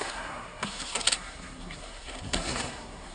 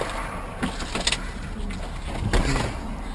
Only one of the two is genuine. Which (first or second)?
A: second